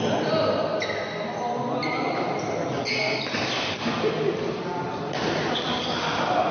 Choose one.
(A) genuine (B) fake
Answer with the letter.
A